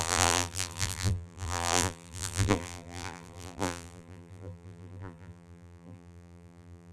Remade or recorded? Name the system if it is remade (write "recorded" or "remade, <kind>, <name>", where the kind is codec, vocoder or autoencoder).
remade, vocoder, BigVGAN v2